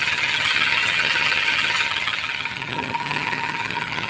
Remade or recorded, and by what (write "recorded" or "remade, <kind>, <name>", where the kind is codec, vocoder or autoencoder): remade, vocoder, HiFi-GAN